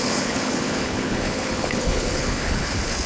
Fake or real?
fake